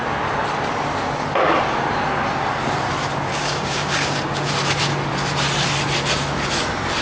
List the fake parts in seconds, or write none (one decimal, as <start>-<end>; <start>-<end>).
3.3-4.5